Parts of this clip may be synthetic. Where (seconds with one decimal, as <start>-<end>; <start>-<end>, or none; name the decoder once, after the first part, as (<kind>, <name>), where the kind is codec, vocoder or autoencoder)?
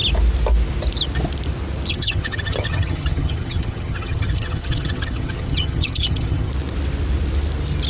1.9-6.5 (vocoder, HiFi-GAN)